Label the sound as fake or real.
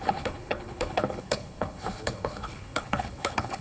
fake